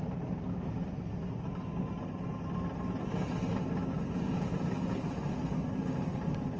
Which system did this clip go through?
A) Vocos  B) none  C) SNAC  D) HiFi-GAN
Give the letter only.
B